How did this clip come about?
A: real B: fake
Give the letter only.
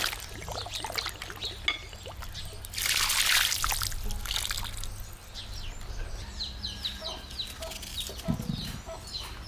A